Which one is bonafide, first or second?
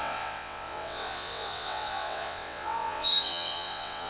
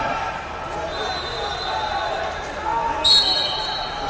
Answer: second